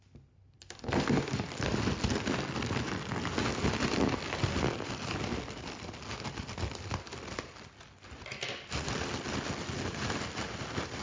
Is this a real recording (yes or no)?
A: yes